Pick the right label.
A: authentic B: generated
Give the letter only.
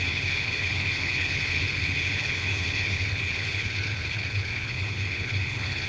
B